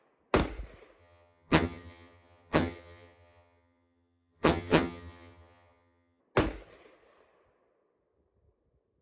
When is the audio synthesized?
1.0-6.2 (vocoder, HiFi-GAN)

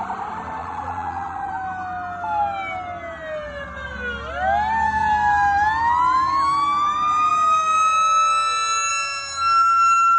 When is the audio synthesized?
0.6-1.5 (vocoder, Vocos)

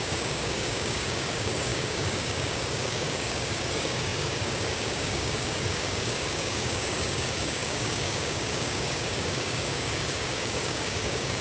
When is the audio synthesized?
0.0-11.4 (codec, DAC)

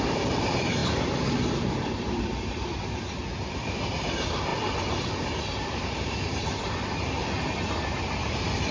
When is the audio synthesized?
0.0-4.5 (vocoder, BigVGAN v2); 5.4-7.2; 7.9-8.7

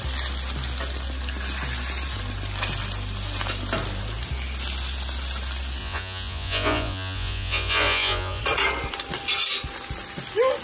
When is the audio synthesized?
5.8-8.4 (vocoder, Vocos)

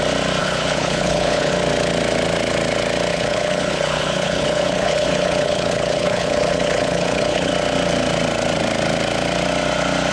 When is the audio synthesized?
0.4-1.5 (codec, HILCodec); 3.1-7.5

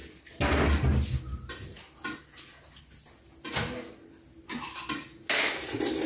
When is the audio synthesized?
none